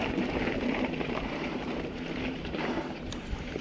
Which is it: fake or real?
fake